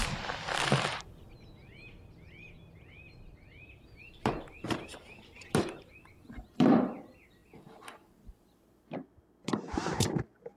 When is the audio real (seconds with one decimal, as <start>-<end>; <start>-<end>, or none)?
1.6-5.9